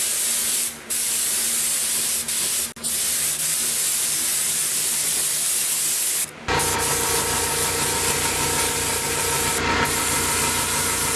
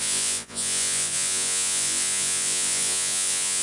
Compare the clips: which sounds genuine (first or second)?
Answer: first